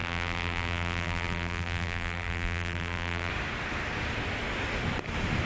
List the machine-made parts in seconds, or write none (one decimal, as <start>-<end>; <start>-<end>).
0.0-3.3